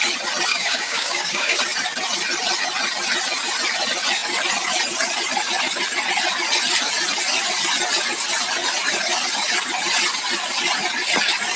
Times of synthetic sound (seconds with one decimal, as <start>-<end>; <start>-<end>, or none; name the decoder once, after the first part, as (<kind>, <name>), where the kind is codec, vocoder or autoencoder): 0.5-1.6 (codec, DAC)